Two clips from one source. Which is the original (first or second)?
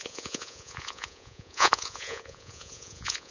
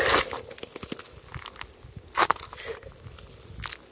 second